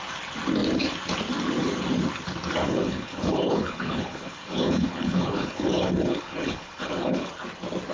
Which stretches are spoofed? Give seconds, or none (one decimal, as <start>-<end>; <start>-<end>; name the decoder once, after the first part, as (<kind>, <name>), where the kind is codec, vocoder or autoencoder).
2.6-7.3 (codec, HILCodec)